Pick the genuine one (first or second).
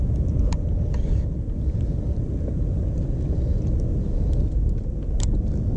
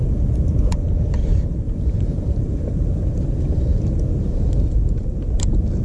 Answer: first